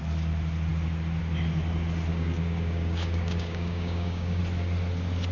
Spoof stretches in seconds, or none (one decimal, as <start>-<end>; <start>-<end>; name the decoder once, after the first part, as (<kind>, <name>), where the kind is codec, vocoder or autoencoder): 2.1-4.4 (codec, DAC)